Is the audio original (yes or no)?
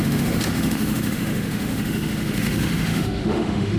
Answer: no